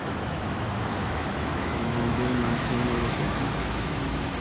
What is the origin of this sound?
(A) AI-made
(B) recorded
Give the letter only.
A